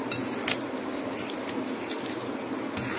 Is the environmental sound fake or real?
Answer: real